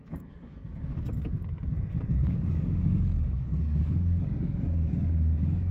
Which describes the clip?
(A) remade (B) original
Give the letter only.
A